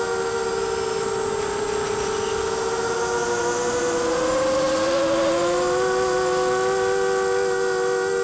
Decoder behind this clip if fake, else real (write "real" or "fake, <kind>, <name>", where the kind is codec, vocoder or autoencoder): real